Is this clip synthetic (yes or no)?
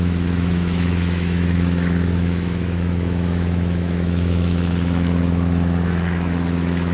yes